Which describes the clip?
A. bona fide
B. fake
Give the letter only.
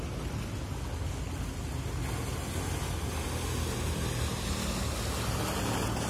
A